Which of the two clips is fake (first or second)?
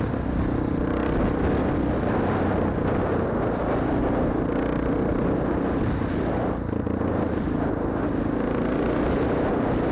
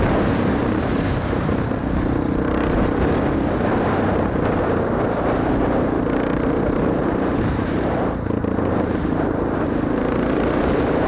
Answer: second